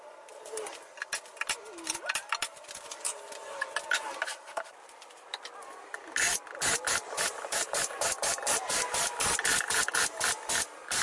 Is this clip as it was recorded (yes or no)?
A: yes